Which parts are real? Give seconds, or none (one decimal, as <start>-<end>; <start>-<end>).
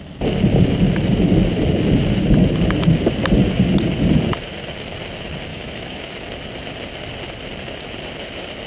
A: 0.0-5.5; 6.0-8.7